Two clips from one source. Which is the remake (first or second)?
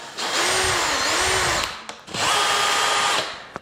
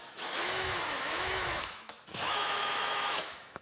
second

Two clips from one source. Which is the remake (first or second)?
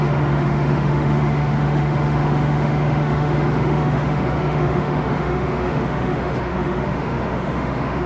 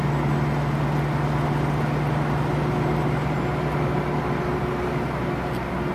first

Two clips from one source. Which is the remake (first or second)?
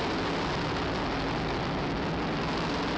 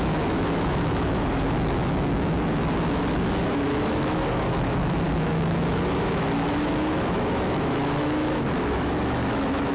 second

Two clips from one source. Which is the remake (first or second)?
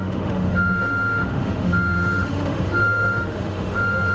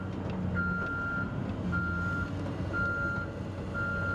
first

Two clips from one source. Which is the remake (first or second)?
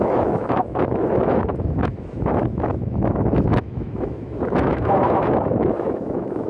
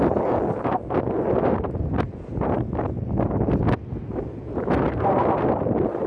first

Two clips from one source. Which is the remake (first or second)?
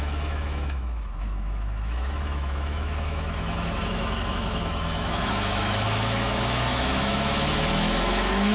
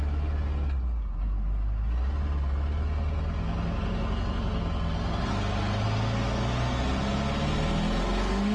first